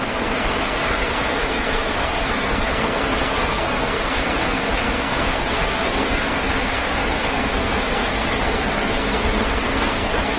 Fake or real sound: fake